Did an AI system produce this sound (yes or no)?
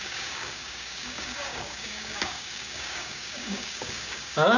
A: yes